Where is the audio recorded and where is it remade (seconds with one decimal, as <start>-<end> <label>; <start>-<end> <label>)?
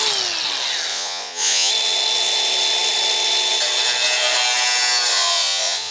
0.0-0.9 recorded; 0.9-1.7 remade; 1.7-5.1 recorded; 5.1-5.9 remade